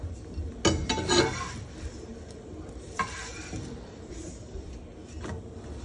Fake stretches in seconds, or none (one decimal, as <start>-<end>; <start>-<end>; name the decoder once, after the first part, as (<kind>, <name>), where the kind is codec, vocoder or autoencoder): 2.1-2.7 (vocoder, BigVGAN v2); 3.3-4.7